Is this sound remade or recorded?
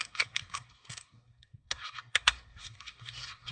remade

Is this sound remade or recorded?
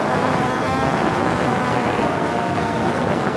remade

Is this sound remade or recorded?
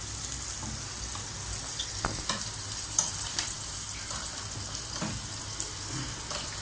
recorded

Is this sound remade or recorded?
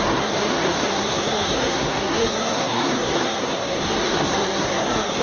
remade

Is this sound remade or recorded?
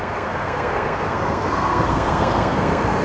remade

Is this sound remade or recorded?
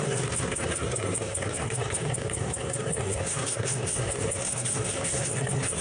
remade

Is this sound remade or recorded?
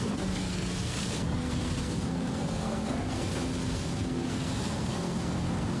remade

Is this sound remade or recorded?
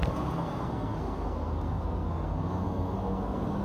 remade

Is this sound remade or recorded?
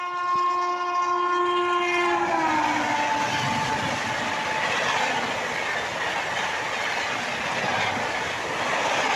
recorded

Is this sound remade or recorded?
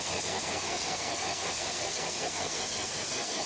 remade